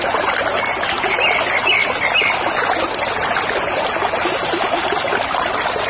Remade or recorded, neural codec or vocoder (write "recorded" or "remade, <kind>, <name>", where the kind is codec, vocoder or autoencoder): recorded